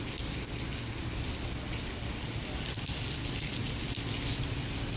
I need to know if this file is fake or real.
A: real